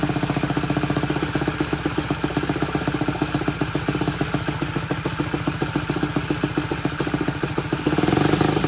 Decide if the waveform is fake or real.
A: real